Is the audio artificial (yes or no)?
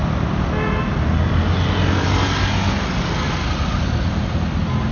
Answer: no